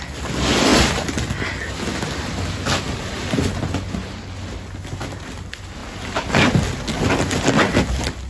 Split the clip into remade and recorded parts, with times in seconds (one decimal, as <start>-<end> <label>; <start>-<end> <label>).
0.0-8.3 recorded